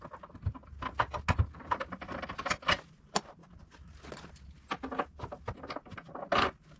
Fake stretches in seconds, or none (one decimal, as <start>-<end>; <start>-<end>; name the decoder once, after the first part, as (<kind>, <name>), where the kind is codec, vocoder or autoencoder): none